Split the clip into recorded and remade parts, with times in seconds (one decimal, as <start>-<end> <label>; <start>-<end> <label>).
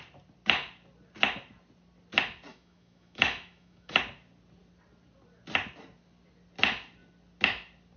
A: 0.0-2.5 recorded; 2.5-4.0 remade; 4.0-8.0 recorded